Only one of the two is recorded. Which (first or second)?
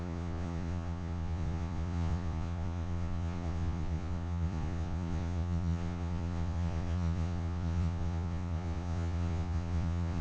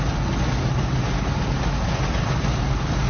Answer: second